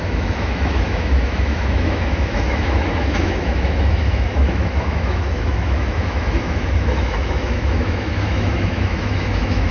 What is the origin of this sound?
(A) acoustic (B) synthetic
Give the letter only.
B